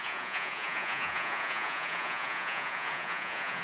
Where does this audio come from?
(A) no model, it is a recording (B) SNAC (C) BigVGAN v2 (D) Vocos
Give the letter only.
D